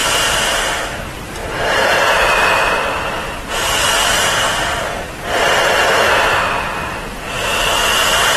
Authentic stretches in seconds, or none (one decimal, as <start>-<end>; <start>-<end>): 0.0-8.4